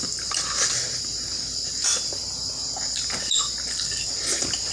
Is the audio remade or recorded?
recorded